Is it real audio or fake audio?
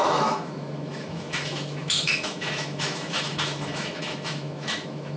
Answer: fake